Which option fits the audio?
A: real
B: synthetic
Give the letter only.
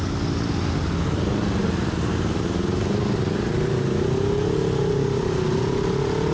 A